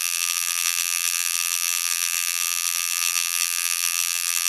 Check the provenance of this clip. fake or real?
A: fake